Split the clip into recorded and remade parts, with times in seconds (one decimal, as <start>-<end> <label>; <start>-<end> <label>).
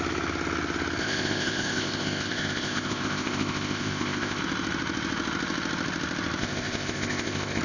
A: 0.0-1.0 recorded; 1.0-4.4 remade; 4.4-6.4 recorded; 6.4-7.6 remade